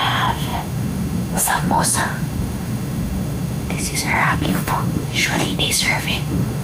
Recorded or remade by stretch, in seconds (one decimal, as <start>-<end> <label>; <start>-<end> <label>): 0.0-6.6 remade